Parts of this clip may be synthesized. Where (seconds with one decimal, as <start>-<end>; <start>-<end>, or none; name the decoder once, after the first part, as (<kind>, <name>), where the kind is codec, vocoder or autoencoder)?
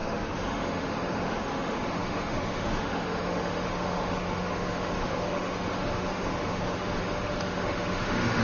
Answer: 0.0-8.4 (autoencoder, DAC-VAE)